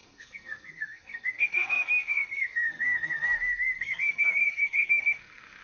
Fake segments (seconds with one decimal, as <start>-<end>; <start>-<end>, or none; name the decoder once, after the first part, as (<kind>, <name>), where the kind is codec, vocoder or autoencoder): 0.0-5.6 (codec, SNAC)